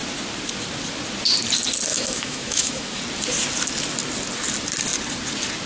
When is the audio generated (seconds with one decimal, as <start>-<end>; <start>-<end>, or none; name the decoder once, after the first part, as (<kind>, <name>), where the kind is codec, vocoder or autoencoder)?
1.9-3.0 (autoencoder, DAC-VAE)